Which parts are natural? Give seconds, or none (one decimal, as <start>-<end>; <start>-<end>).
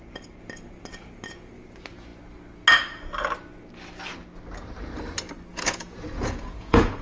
0.0-5.5